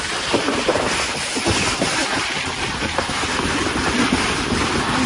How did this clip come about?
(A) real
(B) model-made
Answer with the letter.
A